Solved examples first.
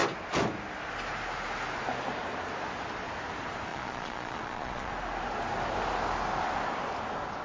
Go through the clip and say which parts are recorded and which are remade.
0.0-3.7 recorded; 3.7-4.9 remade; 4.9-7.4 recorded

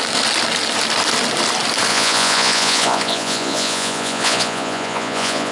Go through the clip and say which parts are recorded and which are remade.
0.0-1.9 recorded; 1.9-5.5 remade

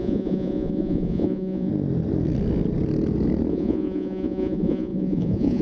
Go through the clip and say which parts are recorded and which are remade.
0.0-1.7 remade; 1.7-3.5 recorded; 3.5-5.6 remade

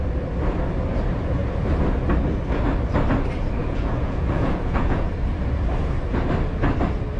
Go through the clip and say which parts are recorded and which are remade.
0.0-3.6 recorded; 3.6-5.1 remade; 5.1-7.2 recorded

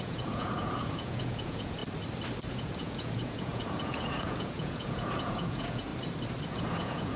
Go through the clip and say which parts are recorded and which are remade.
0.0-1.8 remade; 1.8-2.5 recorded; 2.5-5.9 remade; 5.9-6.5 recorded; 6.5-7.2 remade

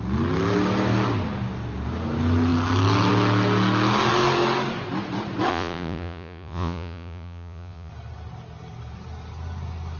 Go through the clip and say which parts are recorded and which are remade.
0.0-5.5 recorded; 5.5-7.9 remade; 7.9-10.0 recorded

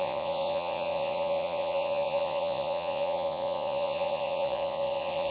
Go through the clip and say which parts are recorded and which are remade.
0.0-5.3 remade